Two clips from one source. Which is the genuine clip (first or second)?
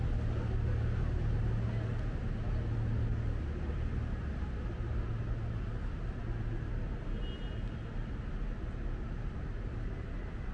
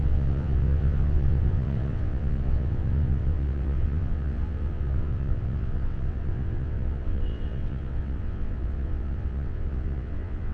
first